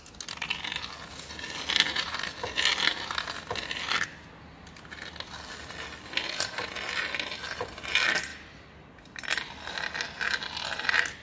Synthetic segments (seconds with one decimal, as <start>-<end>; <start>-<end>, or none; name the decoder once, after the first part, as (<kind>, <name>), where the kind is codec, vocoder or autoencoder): none